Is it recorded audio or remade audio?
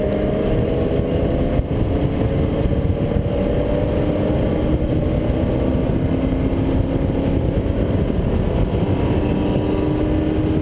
recorded